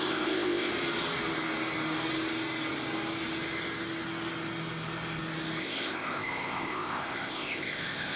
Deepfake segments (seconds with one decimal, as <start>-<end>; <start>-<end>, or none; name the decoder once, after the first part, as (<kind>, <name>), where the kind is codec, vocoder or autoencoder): 0.0-0.7 (codec, ZipCodec); 5.6-8.2

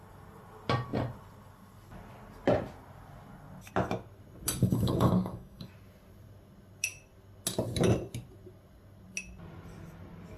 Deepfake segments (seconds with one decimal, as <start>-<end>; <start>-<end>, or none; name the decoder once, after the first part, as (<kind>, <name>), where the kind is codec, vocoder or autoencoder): 4.6-5.7 (codec, DAC)